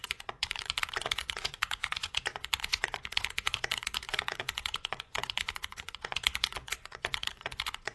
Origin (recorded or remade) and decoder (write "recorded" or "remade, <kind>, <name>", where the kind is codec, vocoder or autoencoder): remade, vocoder, Vocos